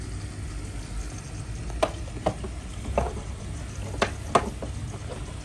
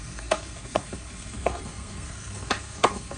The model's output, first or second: second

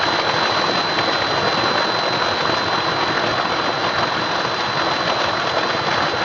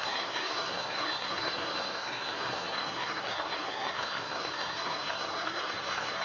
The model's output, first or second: second